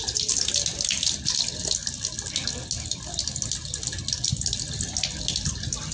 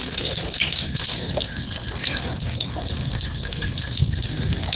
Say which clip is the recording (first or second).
first